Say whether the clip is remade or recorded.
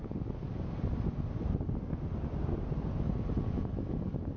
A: recorded